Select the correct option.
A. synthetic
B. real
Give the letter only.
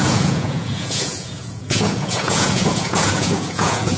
A